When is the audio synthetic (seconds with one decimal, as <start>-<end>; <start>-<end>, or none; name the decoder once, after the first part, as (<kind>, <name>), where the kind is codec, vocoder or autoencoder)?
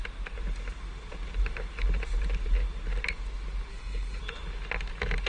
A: 3.7-4.2 (codec, HILCodec)